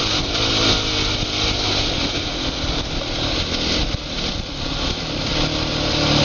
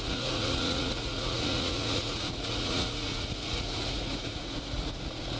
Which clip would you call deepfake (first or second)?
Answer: second